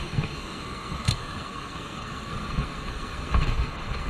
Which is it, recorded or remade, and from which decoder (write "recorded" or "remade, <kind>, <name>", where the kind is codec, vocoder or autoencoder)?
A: remade, codec, SNAC